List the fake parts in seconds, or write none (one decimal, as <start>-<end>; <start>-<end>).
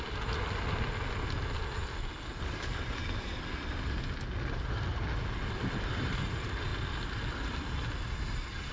none